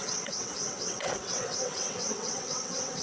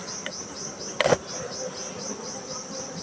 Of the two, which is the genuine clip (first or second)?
second